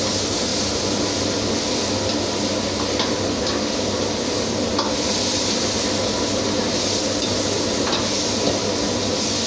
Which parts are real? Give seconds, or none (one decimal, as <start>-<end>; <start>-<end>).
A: 0.0-9.5